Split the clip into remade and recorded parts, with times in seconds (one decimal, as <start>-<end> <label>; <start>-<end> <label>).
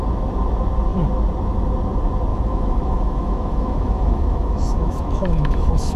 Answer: 0.0-2.3 recorded; 2.3-6.0 remade